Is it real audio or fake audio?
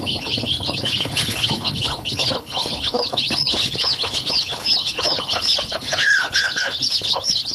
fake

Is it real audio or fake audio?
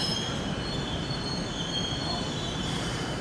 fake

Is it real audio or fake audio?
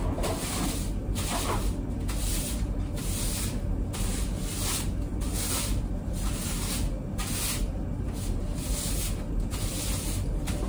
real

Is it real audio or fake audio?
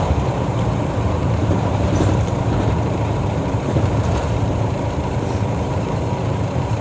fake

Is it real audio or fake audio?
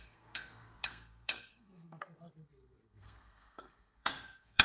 fake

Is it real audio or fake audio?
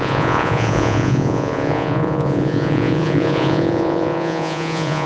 fake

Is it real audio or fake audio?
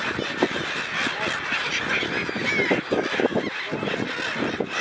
real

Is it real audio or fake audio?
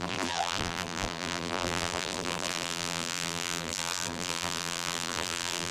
fake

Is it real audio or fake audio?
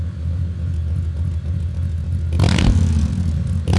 real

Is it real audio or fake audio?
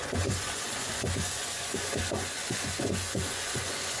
fake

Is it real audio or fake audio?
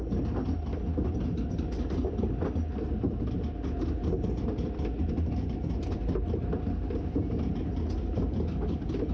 real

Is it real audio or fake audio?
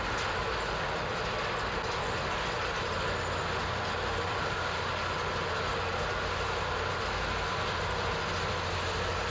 real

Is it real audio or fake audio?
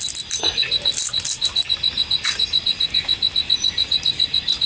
real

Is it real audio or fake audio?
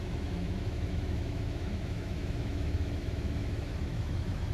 fake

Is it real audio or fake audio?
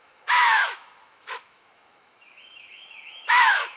fake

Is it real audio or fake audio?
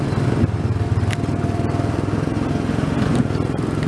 real